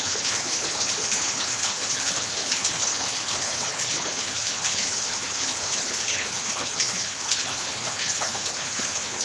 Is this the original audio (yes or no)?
no